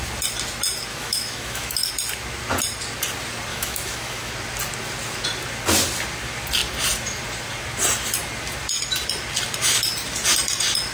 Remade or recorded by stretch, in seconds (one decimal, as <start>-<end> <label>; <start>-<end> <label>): 0.0-0.9 recorded; 0.9-1.9 remade; 1.9-3.5 recorded; 3.5-4.3 remade; 4.3-10.9 recorded